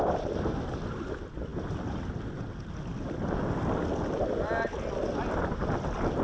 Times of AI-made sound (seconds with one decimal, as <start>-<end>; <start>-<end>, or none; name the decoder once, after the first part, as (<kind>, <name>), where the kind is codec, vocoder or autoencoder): none